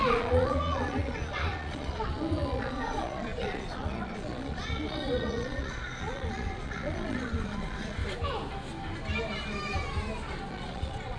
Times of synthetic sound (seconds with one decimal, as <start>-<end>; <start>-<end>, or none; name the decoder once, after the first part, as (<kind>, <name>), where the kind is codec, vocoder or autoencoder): 0.0-8.0 (vocoder, Vocos); 10.5-11.2